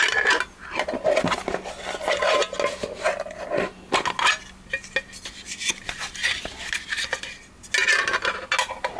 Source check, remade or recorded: recorded